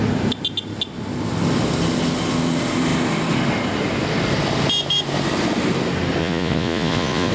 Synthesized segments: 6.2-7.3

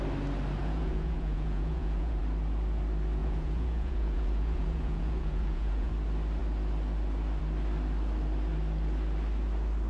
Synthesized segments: 0.6-2.2; 3.2-5.9